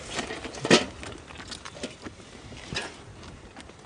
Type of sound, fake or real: real